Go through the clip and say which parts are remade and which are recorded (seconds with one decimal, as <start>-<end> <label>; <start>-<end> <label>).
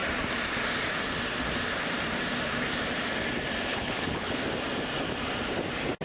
0.0-3.7 recorded; 3.7-4.4 remade; 4.4-6.0 recorded